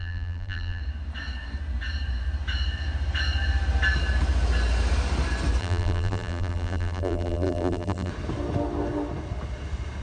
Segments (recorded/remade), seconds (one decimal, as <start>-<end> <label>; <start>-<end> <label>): 0.0-0.8 remade; 0.8-5.6 recorded; 5.6-8.1 remade; 8.1-10.0 recorded